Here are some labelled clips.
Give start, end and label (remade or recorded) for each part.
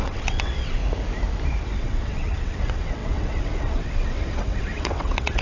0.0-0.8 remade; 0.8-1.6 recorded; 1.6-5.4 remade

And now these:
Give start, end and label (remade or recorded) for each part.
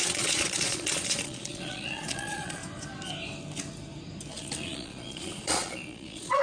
0.0-2.6 remade; 2.6-4.3 recorded; 4.3-6.4 remade